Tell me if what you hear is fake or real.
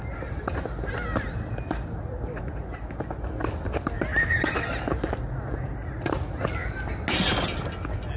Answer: real